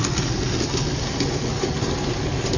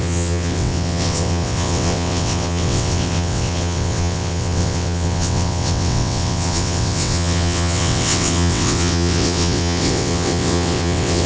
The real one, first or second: first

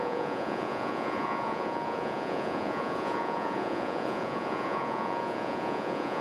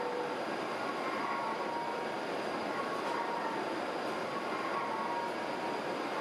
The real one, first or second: second